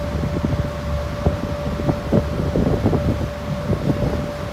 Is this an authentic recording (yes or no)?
yes